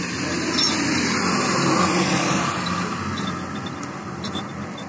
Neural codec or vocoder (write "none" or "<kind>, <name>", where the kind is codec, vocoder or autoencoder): none